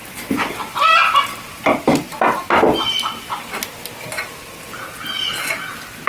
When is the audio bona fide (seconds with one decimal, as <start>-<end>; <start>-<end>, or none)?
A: 0.0-6.1